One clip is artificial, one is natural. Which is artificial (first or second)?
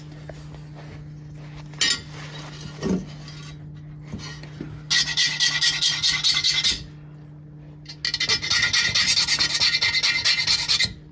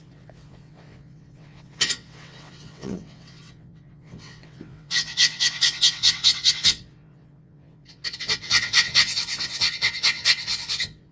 second